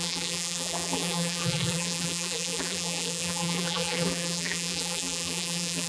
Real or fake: fake